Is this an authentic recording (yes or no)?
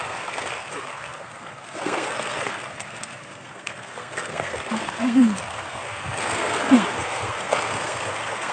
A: no